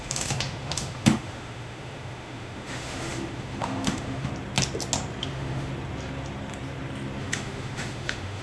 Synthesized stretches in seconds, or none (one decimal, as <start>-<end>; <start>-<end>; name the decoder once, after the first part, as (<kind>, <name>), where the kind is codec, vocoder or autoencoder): 0.0-4.3 (autoencoder, DAC-VAE); 5.2-5.7; 7.2-8.4